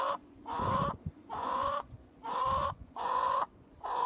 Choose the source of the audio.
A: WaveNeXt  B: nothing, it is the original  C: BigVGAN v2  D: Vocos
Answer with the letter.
D